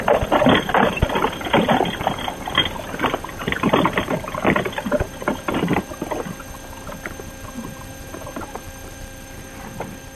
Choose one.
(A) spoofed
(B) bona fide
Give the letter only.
A